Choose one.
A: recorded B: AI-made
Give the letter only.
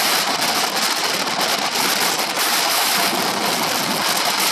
A